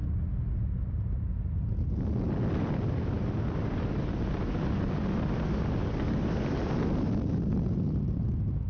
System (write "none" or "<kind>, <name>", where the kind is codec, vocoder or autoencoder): none